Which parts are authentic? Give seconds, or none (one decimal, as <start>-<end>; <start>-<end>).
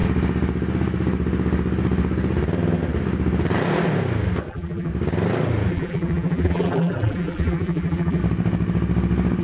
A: 0.0-4.5; 4.9-5.7; 8.2-9.4